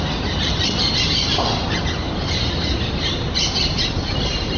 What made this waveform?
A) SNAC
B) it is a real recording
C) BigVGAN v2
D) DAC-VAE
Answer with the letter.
B